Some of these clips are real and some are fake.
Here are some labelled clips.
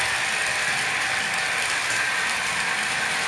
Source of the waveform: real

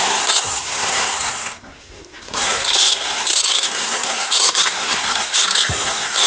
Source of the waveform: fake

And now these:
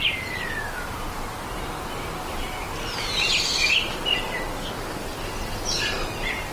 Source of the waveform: real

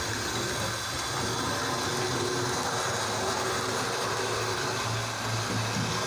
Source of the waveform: real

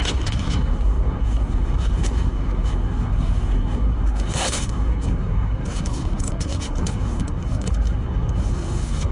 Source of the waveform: fake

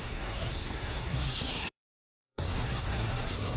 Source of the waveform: fake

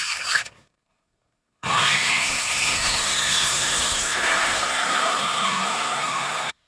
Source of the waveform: fake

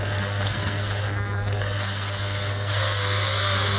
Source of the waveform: fake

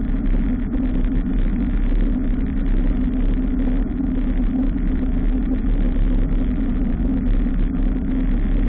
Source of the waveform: real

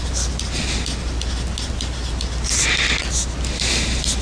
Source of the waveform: real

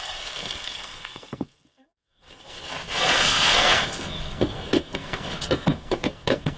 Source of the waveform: fake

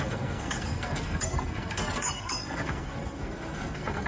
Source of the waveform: fake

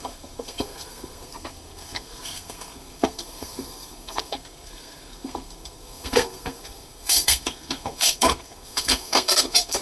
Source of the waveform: fake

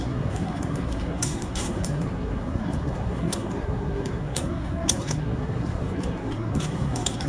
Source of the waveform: fake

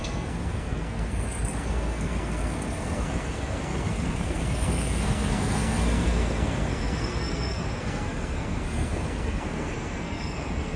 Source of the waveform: fake